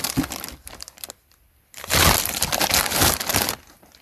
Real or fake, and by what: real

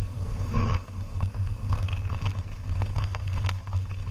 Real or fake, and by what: fake, codec, SNAC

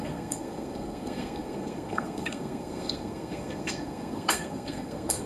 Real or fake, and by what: fake, codec, SNAC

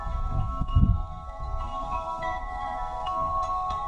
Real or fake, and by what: fake, codec, SNAC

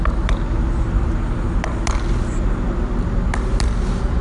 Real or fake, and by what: real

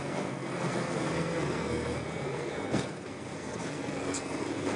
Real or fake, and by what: fake, codec, SNAC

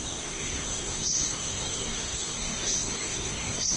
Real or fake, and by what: fake, codec, SNAC